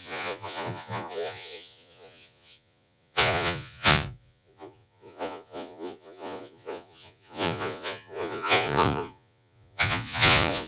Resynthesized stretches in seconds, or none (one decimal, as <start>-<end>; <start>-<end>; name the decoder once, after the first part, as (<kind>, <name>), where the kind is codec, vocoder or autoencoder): 0.0-10.7 (vocoder, Vocos)